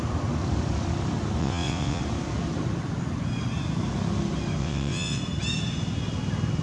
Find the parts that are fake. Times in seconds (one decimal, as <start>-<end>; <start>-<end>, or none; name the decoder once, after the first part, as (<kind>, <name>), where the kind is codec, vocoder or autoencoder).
1.4-2.0 (vocoder, WaveNeXt); 4.6-5.2